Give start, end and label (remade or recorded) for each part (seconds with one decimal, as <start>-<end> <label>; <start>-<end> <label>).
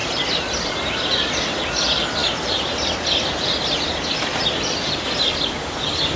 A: 0.0-6.2 recorded